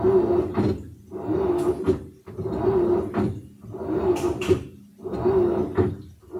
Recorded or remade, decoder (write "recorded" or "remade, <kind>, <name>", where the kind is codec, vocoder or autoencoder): recorded